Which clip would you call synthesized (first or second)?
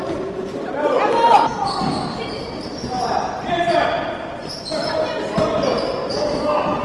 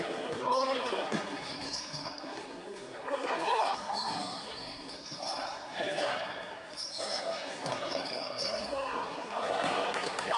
second